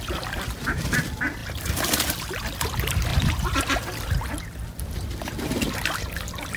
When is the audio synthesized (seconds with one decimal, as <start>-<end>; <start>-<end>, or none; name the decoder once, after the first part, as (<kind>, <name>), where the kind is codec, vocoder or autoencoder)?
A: 0.0-6.6 (vocoder, BigVGAN v2)